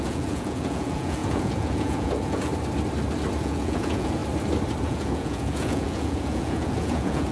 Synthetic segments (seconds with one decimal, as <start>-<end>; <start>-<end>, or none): 0.0-2.5; 3.4-4.2; 4.8-7.3